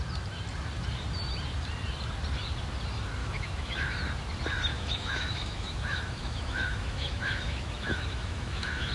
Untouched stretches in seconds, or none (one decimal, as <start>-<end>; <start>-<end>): 0.0-3.2; 4.0-4.7